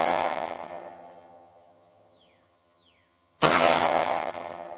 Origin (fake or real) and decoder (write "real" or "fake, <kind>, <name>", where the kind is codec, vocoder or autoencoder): fake, vocoder, HiFi-GAN